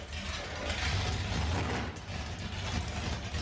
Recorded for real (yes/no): yes